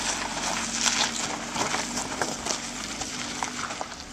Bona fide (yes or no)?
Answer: yes